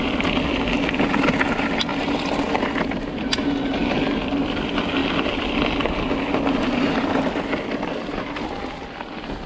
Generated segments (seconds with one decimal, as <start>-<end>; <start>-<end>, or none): none